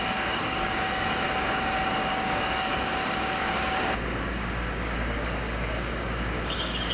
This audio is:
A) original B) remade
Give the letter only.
B